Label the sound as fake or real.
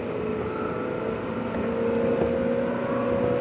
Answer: real